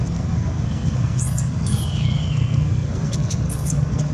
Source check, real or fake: fake